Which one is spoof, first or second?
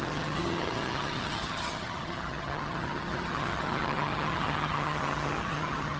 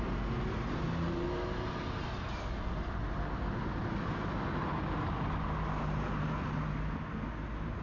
first